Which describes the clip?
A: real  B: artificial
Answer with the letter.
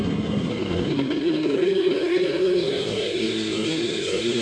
B